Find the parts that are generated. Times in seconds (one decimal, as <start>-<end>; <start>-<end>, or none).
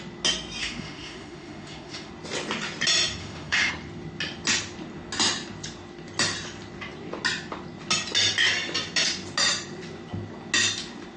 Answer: 0.6-2.1; 3.2-3.7